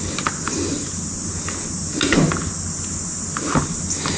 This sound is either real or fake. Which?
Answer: real